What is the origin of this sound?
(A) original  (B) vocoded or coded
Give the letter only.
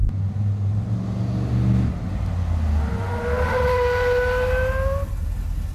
A